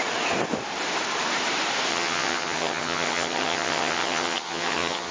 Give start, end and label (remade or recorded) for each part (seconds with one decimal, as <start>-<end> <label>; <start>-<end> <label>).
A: 0.0-1.9 recorded; 1.9-5.1 remade